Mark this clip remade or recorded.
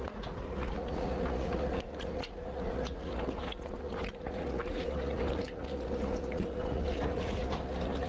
remade